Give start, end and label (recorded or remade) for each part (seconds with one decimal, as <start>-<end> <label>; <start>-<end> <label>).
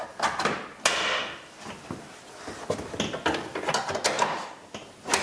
0.0-5.2 recorded